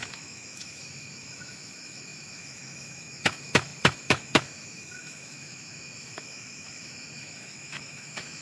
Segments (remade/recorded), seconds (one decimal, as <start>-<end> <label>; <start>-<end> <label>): 0.0-8.4 remade